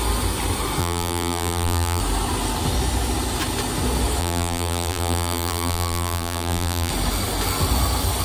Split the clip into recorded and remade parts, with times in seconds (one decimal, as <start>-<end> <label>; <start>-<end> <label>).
0.0-0.8 recorded; 0.8-2.0 remade; 2.0-4.2 recorded; 4.2-6.9 remade; 6.9-8.2 recorded